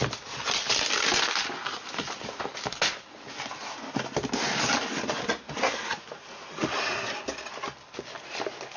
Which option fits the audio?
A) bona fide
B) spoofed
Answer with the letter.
A